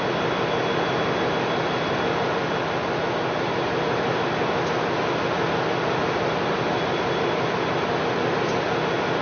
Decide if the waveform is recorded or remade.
recorded